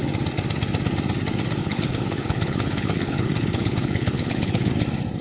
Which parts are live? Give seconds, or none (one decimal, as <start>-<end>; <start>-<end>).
0.0-1.6; 4.7-5.2